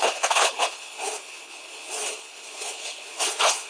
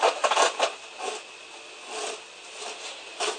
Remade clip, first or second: first